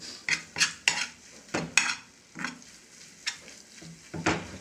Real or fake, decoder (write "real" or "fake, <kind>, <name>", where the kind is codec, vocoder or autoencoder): real